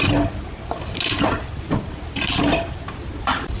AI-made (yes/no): no